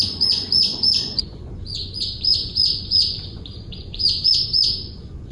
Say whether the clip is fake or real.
fake